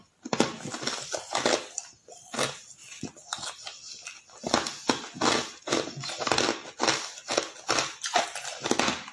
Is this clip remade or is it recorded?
recorded